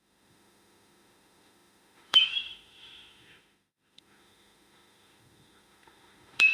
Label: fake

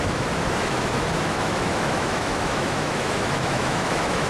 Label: fake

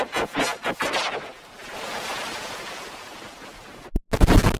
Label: real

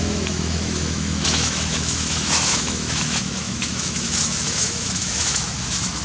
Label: fake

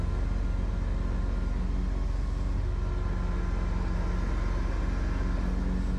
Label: real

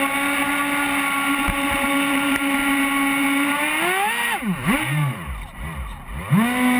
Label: real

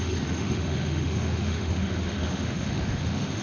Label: fake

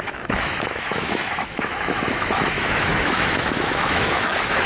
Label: fake